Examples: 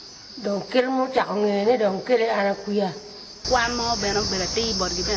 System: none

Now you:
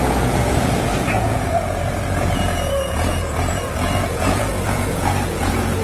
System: vocoder, Vocos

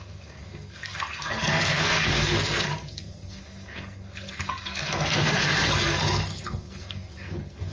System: codec, SNAC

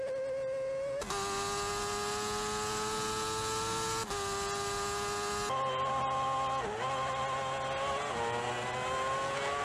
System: none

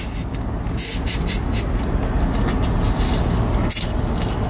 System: none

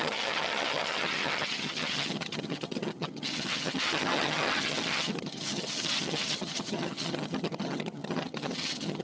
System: vocoder, HiFi-GAN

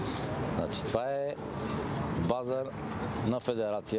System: none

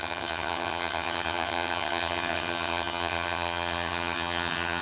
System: vocoder, HiFi-GAN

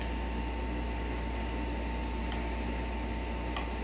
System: none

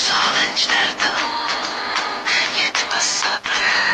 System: none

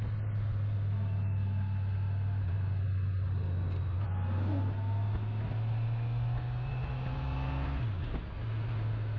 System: none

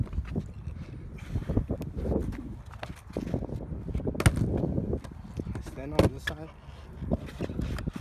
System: none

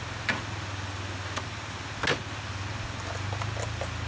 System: none